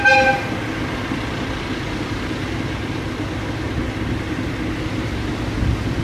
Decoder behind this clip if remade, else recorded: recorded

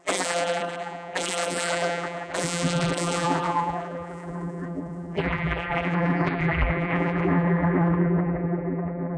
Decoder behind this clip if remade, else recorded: remade, vocoder, BigVGAN v2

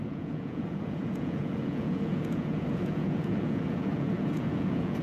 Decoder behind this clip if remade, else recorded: remade, vocoder, Vocos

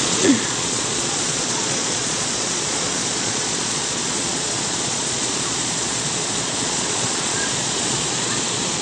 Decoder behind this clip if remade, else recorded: remade, vocoder, Vocos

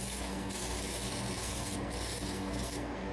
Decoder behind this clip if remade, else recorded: remade, codec, SNAC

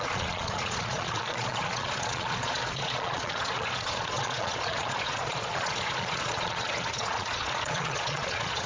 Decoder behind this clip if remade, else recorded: remade, vocoder, Vocos